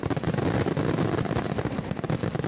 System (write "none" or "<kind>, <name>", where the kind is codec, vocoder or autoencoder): none